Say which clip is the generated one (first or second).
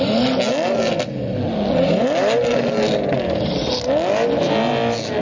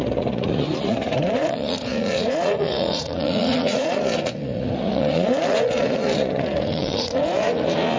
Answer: second